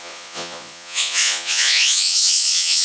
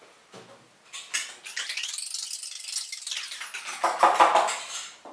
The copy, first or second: first